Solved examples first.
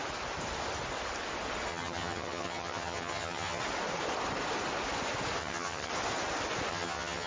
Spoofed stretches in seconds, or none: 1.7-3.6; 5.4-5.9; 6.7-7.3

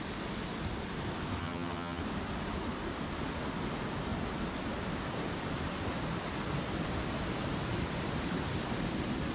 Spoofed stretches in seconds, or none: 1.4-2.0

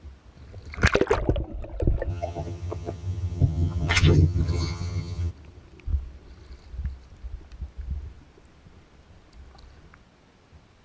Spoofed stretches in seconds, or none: 2.1-5.3